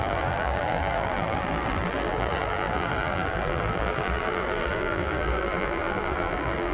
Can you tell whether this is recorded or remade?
remade